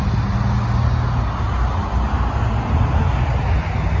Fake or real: real